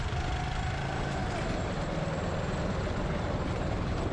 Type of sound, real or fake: real